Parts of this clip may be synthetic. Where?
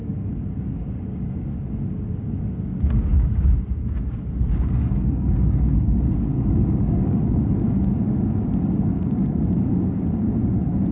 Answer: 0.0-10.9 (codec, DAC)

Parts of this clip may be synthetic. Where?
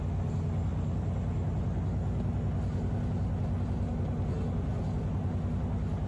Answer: none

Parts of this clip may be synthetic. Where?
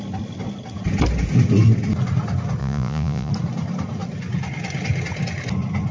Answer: 2.6-3.3 (vocoder, Vocos)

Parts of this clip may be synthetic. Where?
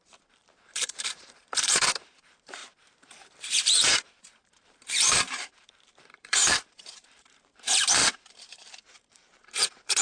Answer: 0.0-10.0 (vocoder, BigVGAN v2)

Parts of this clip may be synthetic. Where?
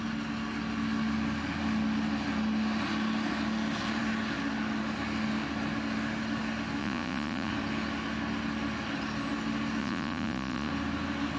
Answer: 6.8-7.5 (vocoder, Vocos); 9.8-10.7